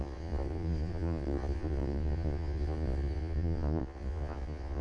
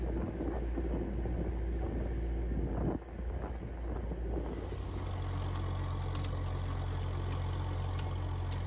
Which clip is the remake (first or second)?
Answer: first